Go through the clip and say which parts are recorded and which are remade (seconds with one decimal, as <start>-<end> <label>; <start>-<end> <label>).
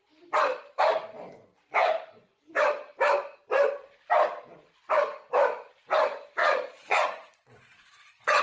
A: 0.0-6.4 recorded; 6.4-8.4 remade